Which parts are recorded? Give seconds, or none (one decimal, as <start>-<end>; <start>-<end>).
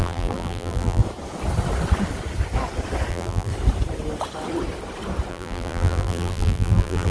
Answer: 1.0-3.1; 3.5-5.3